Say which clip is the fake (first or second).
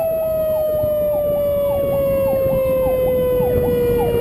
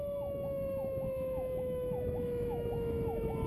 second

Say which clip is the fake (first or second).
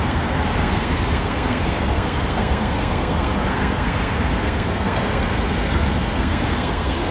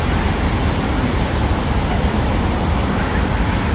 first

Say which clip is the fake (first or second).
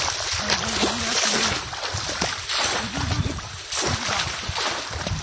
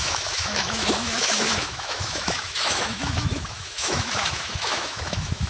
second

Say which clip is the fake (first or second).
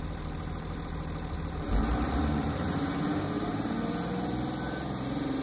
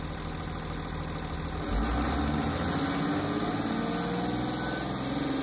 first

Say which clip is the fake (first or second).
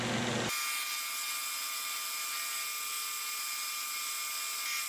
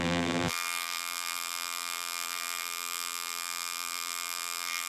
second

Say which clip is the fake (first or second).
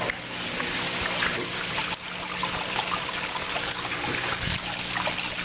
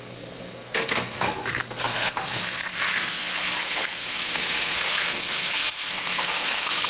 second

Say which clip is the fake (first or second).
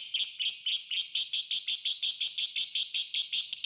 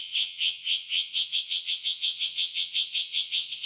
second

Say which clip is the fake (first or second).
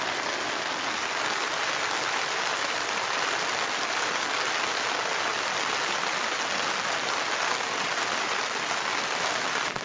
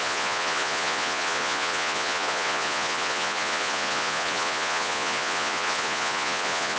second